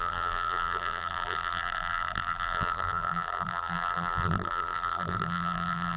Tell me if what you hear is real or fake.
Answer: fake